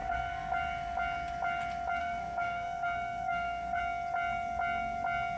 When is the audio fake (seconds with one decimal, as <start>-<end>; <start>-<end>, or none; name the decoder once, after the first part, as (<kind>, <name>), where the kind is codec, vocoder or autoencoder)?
0.0-0.5 (codec, SNAC); 2.0-3.8